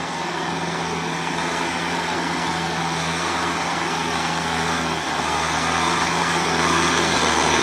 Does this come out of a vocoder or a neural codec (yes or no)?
yes